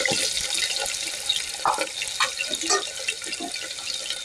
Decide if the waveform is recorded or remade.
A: recorded